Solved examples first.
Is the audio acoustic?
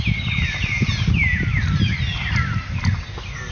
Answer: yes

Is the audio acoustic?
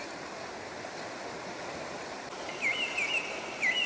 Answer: yes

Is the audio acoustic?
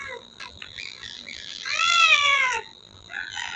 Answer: no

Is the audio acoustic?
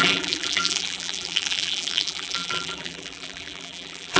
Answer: no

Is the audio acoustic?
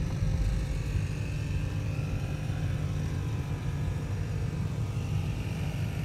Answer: no